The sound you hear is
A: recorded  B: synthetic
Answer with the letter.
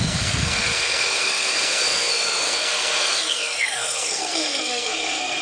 B